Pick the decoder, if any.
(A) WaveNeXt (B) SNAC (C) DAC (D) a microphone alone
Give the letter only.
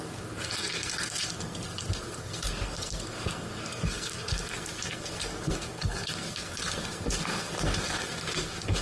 B